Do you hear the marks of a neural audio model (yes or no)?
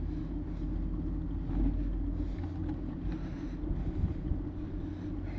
no